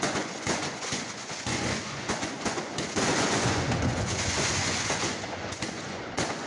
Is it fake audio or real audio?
fake